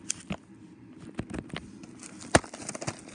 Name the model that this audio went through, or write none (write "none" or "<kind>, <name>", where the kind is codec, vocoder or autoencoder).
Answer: none